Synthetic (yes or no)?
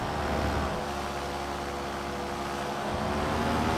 no